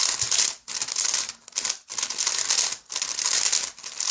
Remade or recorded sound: recorded